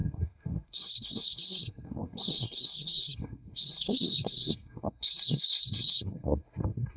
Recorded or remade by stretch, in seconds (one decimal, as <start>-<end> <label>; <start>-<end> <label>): 0.0-7.0 remade